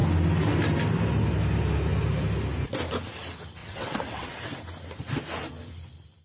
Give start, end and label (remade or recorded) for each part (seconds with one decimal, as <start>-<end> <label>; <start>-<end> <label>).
0.0-3.6 recorded; 3.6-4.6 remade; 4.6-6.2 recorded